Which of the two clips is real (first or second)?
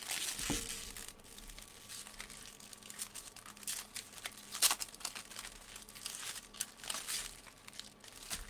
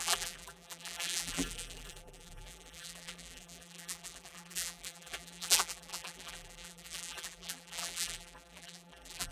first